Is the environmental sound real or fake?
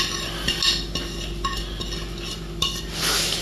real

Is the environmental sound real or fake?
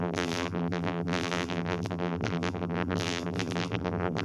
fake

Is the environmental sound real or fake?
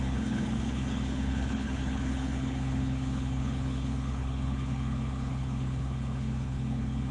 fake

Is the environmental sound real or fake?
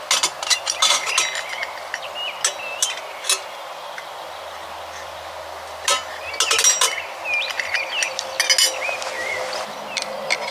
real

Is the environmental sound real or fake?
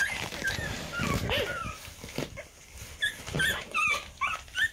real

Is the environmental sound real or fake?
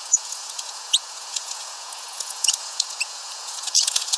fake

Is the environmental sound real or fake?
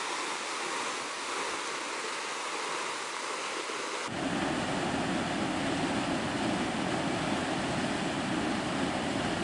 real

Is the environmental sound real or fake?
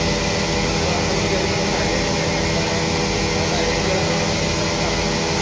real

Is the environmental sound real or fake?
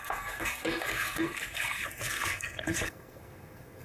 fake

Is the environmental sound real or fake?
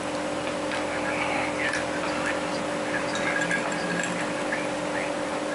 real